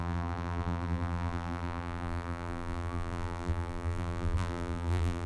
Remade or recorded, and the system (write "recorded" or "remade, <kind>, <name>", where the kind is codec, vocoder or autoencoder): remade, vocoder, BigVGAN v2